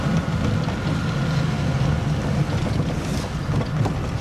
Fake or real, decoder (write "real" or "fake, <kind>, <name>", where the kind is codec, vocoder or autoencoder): real